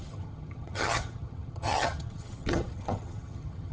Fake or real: fake